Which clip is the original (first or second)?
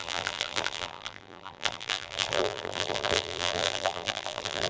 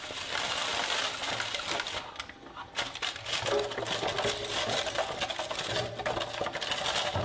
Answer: second